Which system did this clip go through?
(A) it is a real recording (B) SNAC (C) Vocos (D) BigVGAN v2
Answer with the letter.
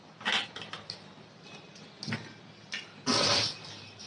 A